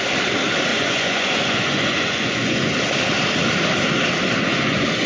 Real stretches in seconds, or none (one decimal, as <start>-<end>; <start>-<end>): 0.0-0.7; 2.7-4.5